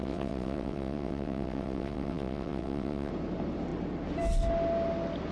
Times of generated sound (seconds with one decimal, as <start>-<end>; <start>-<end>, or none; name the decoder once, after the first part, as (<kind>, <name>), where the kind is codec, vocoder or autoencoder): 0.0-3.1 (vocoder, WaveNeXt)

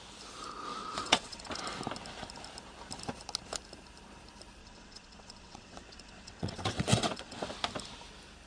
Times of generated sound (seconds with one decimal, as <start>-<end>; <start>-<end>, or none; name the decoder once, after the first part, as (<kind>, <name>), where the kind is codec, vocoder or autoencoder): 0.7-1.5 (vocoder, WaveNeXt); 4.6-7.5

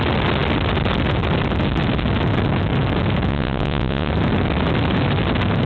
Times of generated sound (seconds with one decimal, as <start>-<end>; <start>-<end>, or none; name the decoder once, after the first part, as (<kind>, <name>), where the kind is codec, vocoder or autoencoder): 3.3-4.1 (vocoder, WaveNeXt)

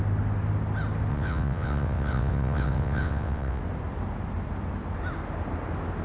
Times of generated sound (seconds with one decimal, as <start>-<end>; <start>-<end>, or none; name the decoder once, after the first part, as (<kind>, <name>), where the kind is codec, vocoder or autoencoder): 1.1-3.6 (vocoder, WaveNeXt)

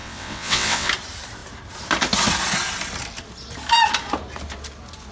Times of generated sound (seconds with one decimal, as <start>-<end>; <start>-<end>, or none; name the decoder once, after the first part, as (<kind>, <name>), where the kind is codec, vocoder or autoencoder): 0.0-0.9 (vocoder, WaveNeXt)

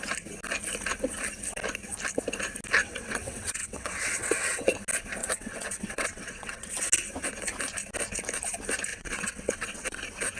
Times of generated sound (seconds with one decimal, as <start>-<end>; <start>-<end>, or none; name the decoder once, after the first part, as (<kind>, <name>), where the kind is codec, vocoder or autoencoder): 2.8-4.7 (vocoder, WaveNeXt); 5.2-6.8; 8.9-10.0